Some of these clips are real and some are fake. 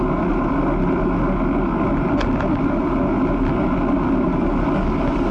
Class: real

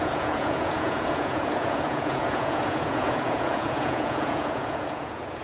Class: fake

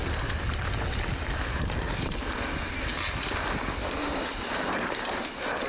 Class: real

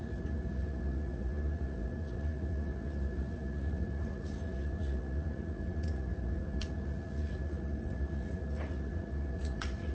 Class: fake